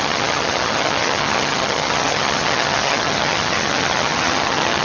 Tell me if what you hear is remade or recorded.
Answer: remade